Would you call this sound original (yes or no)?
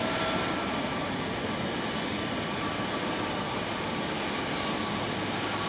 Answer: yes